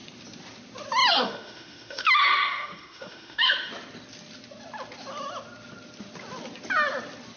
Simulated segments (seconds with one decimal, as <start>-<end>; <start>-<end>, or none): 1.1-3.7